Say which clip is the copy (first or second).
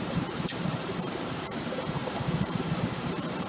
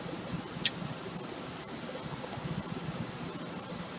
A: first